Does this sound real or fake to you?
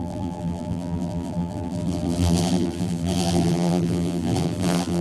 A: fake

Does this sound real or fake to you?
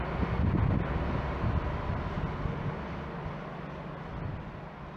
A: real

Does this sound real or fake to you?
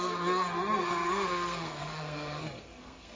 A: fake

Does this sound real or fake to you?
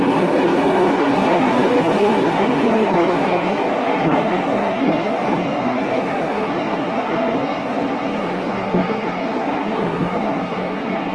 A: fake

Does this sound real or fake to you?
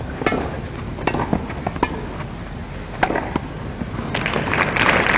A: real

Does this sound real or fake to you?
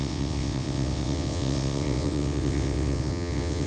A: fake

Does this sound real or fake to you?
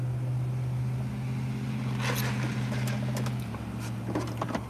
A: real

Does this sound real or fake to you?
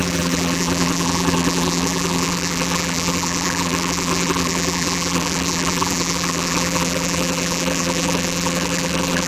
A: fake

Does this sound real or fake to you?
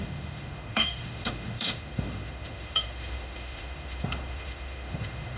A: fake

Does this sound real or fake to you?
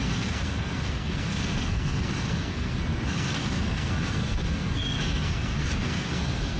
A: fake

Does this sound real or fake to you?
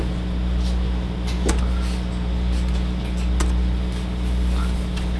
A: real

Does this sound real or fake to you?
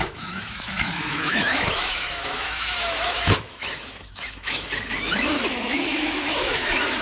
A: fake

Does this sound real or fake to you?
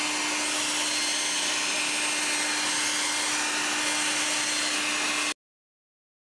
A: real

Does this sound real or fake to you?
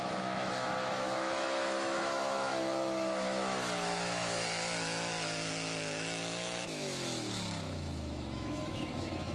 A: fake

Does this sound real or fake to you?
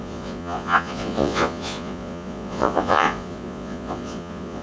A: fake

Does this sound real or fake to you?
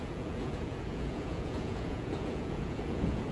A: fake